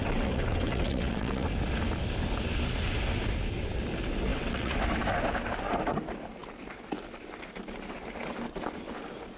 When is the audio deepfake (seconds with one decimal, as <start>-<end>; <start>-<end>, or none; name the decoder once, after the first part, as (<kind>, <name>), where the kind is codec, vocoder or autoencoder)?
0.0-1.5 (vocoder, WaveNeXt); 4.3-4.8